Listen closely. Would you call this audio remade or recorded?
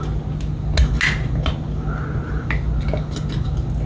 recorded